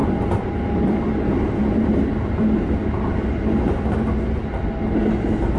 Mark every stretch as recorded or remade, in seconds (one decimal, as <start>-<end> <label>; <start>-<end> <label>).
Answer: 0.0-0.5 remade; 0.5-1.3 recorded; 1.3-1.8 remade; 1.8-5.6 recorded